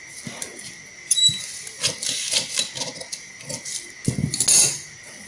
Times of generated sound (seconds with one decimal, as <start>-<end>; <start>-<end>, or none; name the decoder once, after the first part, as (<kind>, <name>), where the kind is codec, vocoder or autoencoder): none